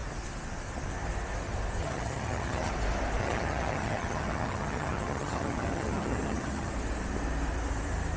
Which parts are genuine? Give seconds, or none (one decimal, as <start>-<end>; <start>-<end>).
0.0-1.8; 2.7-3.2; 6.7-8.2